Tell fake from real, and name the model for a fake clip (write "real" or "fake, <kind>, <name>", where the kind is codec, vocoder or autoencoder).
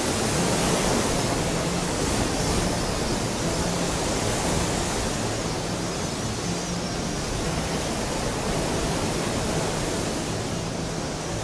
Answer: real